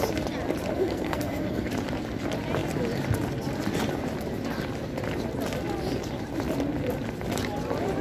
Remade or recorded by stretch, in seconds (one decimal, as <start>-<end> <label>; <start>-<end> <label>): 0.0-0.7 recorded; 0.7-1.7 remade; 1.7-8.0 recorded